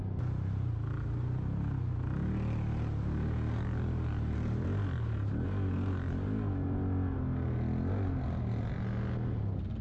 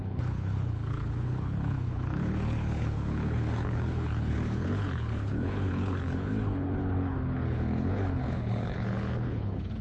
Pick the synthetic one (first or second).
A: second